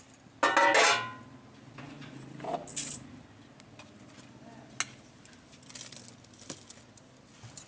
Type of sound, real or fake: real